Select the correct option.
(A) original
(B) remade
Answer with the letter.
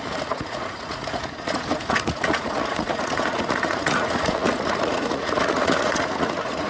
B